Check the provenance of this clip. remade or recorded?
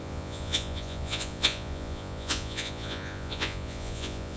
remade